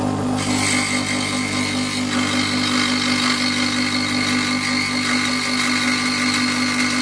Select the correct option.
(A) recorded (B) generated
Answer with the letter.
A